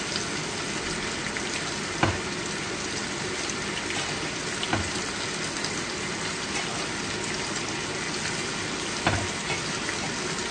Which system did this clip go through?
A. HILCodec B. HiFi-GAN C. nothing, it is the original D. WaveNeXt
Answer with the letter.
C